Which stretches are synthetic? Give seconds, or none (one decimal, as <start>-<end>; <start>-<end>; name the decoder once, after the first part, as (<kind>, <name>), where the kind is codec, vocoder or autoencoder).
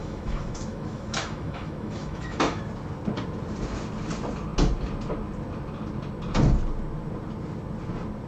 0.0-2.6 (autoencoder, DAC-VAE)